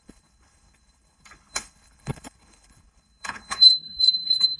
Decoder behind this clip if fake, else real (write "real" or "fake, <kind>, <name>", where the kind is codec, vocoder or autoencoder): fake, codec, HILCodec